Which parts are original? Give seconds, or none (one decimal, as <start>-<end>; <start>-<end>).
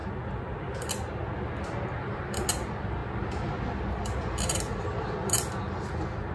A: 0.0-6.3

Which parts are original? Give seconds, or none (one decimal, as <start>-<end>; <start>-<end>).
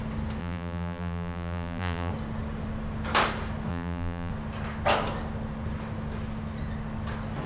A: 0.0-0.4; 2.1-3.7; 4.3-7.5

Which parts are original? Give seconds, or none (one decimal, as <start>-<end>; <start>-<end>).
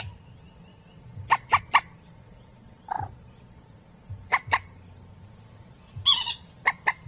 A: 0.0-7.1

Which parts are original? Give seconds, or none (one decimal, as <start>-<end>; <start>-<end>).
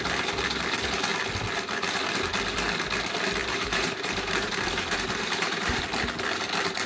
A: 0.0-3.4; 5.8-6.9